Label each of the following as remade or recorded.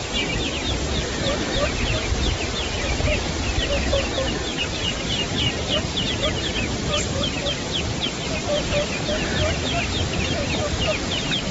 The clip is recorded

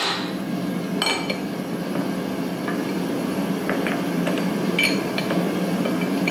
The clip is recorded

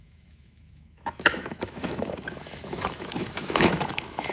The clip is remade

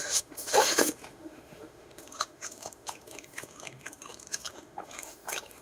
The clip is remade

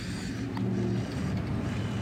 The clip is recorded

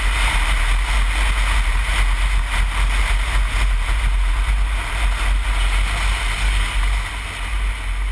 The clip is recorded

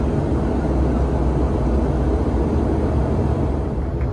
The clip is recorded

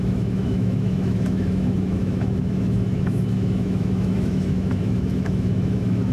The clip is remade